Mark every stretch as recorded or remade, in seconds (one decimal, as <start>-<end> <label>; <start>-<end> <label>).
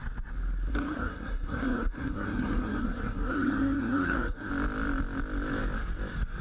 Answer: 0.0-0.7 recorded; 0.7-4.5 remade; 4.5-6.4 recorded